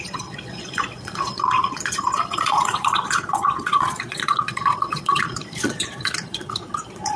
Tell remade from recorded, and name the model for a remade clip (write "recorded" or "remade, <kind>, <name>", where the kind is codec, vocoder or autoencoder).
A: remade, vocoder, Vocos